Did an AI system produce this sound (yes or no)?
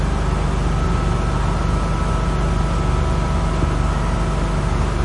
no